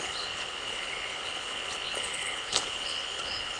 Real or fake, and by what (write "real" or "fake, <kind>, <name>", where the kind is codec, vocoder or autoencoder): fake, codec, HILCodec